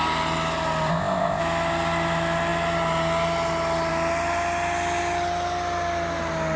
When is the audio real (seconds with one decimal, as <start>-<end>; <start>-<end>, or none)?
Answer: 0.0-0.9; 1.4-6.6